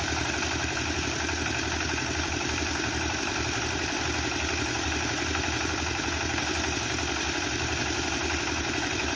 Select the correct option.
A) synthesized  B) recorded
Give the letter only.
A